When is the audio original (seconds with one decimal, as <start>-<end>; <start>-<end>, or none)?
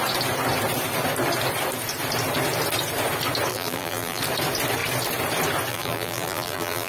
0.0-3.5; 4.2-5.7